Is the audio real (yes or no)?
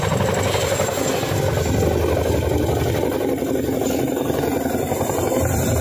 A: yes